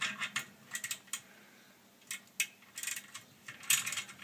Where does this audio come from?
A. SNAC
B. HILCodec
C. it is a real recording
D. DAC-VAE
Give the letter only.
C